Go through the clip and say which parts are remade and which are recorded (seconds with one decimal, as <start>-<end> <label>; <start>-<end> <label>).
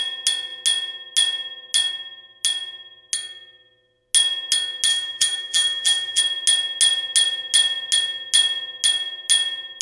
0.0-4.9 recorded; 4.9-6.2 remade; 6.2-9.8 recorded